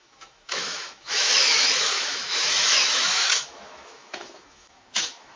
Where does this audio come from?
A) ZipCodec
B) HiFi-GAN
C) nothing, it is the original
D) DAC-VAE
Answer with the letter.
D